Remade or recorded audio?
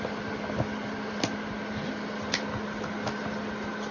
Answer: recorded